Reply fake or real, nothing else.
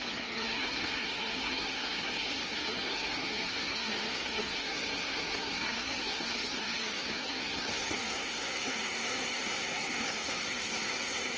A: fake